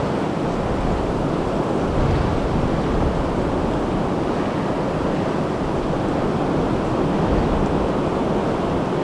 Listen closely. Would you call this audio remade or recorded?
recorded